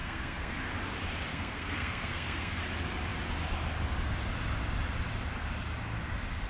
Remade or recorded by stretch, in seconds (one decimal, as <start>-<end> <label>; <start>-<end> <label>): 0.0-0.6 remade; 0.6-1.3 recorded; 1.3-2.6 remade; 2.6-6.5 recorded